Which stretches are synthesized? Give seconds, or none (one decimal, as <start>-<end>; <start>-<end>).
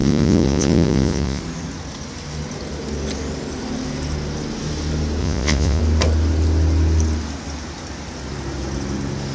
0.0-1.4; 5.2-5.8